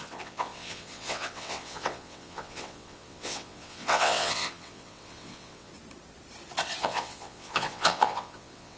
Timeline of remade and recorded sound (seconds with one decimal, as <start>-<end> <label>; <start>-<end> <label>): 0.0-5.7 remade; 5.7-6.8 recorded; 6.8-8.8 remade